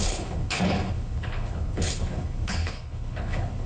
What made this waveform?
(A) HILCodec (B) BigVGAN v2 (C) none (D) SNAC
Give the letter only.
A